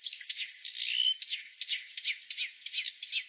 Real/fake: real